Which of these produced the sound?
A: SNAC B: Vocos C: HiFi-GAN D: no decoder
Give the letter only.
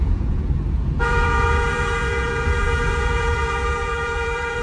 B